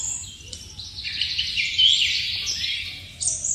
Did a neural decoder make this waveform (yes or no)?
no